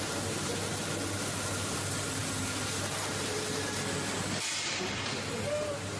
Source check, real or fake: real